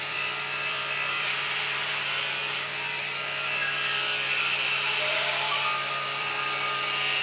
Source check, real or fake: fake